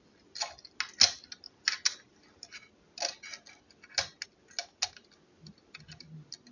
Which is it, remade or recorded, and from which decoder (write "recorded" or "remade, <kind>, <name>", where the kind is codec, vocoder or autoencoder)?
recorded